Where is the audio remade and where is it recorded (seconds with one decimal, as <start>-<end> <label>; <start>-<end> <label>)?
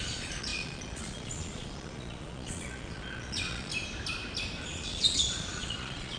0.0-3.7 remade; 3.7-4.6 recorded; 4.6-6.2 remade